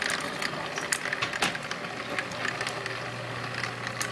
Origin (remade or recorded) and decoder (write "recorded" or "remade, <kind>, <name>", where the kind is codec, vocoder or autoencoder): recorded